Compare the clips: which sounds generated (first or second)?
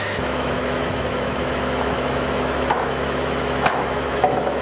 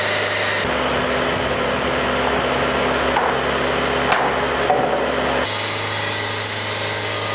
first